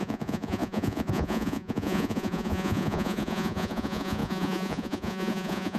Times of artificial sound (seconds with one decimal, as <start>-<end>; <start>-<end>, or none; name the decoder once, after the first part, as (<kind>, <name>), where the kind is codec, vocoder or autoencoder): 0.0-5.8 (vocoder, Vocos)